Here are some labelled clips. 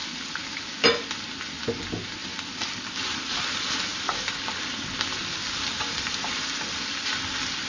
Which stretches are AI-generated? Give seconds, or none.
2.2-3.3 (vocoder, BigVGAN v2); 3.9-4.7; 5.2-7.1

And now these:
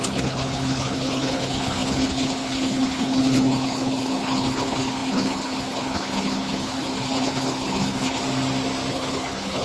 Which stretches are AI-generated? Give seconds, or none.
0.0-8.2 (codec, HILCodec); 8.9-9.6

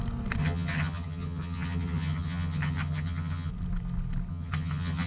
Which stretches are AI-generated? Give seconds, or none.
0.4-3.5 (vocoder, HiFi-GAN); 4.3-5.1

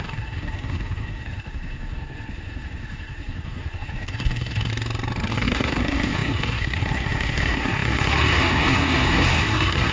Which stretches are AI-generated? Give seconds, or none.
0.0-4.7 (codec, SNAC); 5.3-9.9

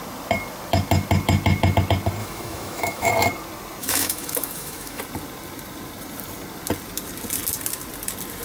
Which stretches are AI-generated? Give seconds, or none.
2.2-3.1 (autoencoder, DAC-VAE); 3.8-5.0

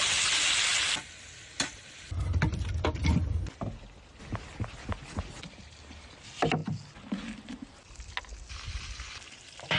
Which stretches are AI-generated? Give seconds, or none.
none

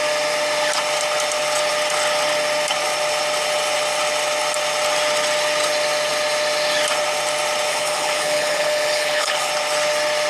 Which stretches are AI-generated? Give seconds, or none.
7.7-9.5 (codec, HILCodec)